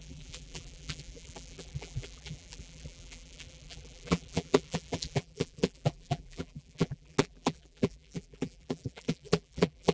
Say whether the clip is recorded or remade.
remade